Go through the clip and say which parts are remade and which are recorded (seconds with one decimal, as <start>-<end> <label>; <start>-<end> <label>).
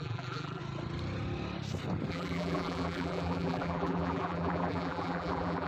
0.0-0.6 remade; 0.6-2.1 recorded; 2.1-5.7 remade